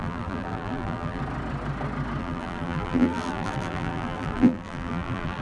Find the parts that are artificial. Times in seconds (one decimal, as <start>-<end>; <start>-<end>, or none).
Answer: 0.0-1.2; 2.2-5.4